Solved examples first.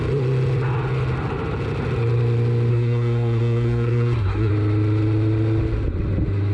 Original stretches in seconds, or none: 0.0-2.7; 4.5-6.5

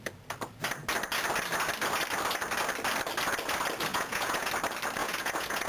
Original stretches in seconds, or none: 0.0-3.9; 4.5-5.0